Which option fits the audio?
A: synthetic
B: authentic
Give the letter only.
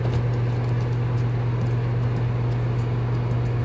B